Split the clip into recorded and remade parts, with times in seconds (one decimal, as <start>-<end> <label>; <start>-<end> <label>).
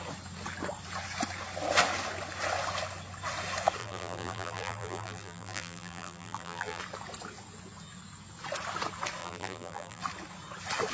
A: 0.0-3.8 recorded; 3.8-6.8 remade; 6.8-9.2 recorded; 9.2-10.0 remade; 10.0-10.9 recorded